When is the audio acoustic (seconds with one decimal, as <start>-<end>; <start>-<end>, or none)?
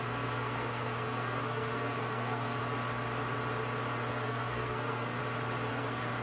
2.6-4.1; 5.2-5.7